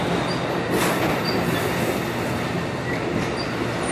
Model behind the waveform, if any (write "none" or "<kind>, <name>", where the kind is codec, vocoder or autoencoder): none